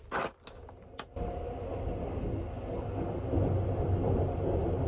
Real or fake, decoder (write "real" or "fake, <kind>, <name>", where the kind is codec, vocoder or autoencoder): real